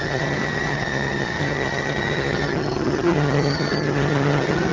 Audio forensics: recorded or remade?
remade